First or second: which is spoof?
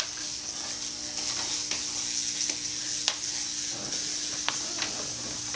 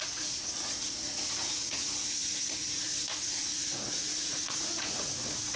second